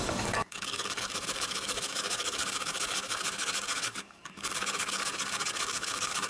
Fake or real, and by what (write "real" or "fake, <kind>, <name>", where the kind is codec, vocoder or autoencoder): fake, codec, DAC